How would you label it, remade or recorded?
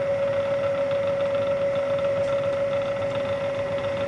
recorded